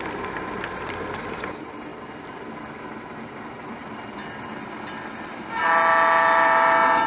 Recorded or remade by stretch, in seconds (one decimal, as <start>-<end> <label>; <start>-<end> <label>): 0.0-7.1 recorded